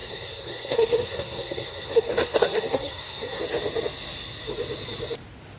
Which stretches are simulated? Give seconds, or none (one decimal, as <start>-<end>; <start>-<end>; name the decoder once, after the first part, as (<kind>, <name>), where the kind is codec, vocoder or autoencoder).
0.0-3.4 (codec, SNAC)